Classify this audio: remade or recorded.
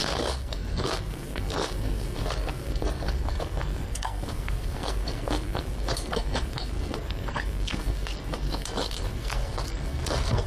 remade